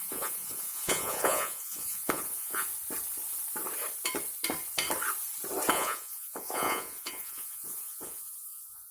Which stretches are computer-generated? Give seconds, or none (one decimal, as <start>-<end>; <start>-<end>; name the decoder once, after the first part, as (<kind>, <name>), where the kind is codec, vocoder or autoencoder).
0.0-2.7 (vocoder, Vocos); 5.7-8.9